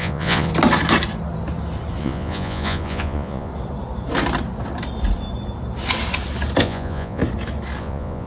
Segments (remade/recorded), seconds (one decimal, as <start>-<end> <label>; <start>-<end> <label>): 0.0-0.5 remade; 0.5-2.0 recorded; 2.0-3.5 remade; 3.5-6.6 recorded; 6.6-7.2 remade; 7.2-7.8 recorded; 7.8-8.3 remade